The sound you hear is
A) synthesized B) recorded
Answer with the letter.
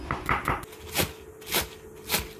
B